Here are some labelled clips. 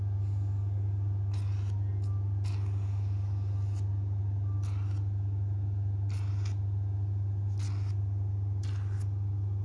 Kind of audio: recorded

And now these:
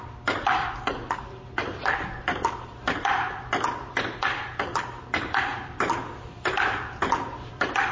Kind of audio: remade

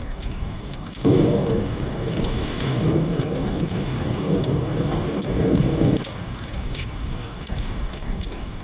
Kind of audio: remade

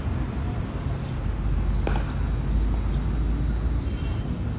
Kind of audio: recorded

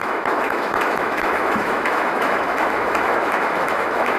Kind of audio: remade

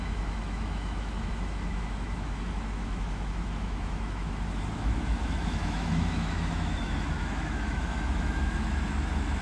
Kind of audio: remade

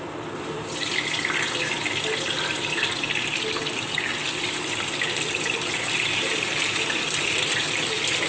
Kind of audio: recorded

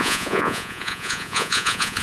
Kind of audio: remade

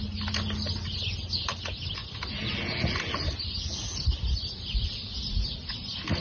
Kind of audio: recorded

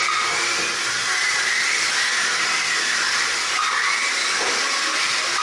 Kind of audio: recorded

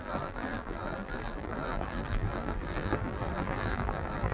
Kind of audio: remade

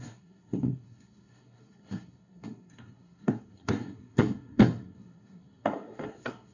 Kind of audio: remade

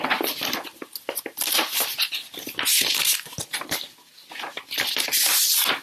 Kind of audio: recorded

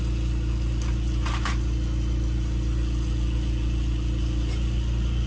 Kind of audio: recorded